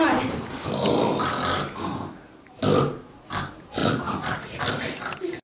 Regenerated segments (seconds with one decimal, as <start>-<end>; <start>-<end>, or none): 3.8-4.6